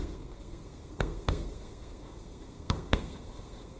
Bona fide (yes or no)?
no